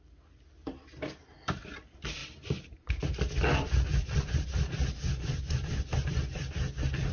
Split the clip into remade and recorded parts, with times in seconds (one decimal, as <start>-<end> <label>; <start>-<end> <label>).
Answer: 0.0-2.2 recorded; 2.2-3.2 remade; 3.2-3.9 recorded; 3.9-5.0 remade; 5.0-7.1 recorded